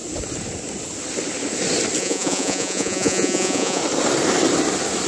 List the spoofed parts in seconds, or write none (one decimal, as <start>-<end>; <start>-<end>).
2.0-3.8